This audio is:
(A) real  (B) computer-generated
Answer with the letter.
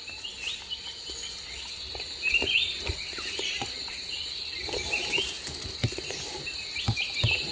A